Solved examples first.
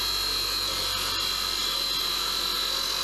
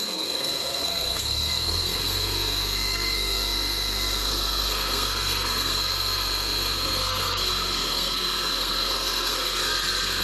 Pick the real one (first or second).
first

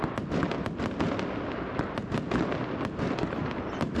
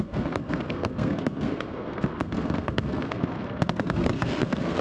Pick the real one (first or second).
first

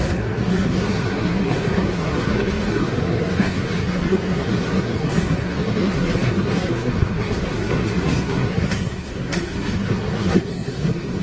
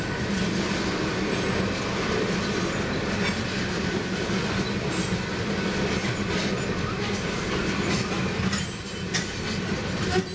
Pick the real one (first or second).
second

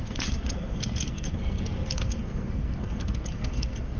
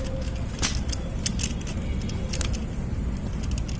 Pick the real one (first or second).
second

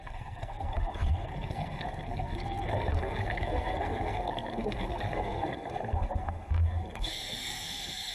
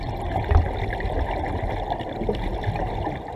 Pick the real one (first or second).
second